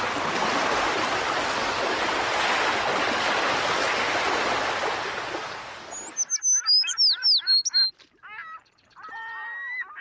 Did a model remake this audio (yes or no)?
no